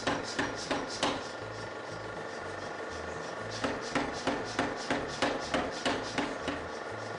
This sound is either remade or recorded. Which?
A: recorded